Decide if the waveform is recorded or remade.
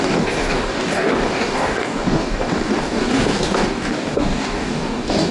remade